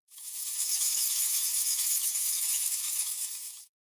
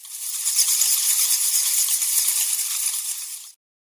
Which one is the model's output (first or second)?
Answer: first